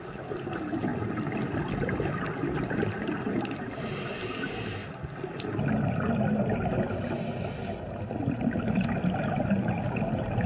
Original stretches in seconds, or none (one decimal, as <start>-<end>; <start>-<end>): 0.9-2.5; 4.8-9.2

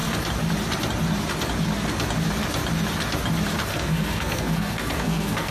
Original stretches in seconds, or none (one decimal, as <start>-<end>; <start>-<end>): 0.0-3.7

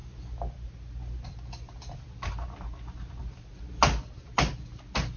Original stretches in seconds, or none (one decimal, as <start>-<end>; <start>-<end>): 0.0-5.2

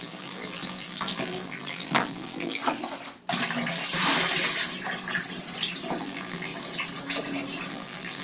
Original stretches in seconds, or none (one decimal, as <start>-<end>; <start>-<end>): 2.6-6.0; 6.5-7.7

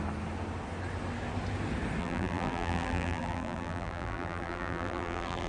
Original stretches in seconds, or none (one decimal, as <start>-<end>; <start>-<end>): 0.0-2.0

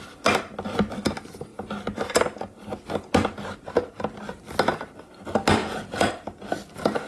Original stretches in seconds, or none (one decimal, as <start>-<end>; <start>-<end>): 0.0-5.6; 6.1-7.1

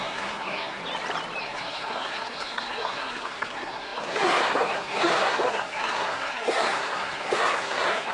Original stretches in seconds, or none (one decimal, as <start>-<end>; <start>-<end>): 0.8-1.4

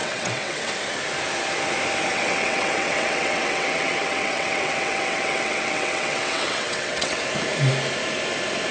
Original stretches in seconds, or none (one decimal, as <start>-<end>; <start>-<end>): 0.7-2.1; 7.2-8.7